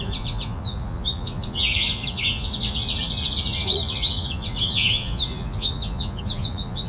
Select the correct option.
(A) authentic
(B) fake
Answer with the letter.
B